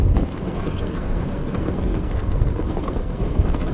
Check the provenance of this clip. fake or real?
fake